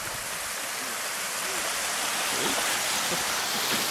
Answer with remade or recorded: recorded